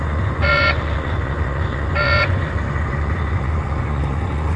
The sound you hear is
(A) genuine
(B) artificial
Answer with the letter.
B